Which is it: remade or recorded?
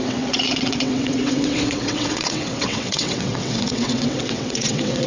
remade